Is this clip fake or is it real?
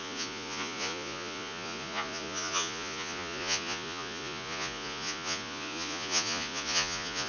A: fake